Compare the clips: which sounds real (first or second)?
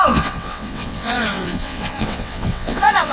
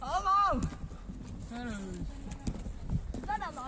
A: second